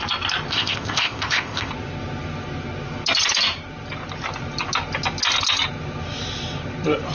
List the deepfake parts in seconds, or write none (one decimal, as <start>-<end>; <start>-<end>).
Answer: 0.5-1.7